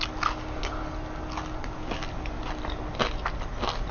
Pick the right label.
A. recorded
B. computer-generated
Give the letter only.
A